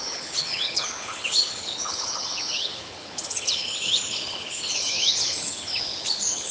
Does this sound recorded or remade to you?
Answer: remade